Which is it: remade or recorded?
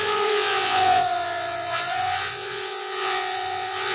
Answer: remade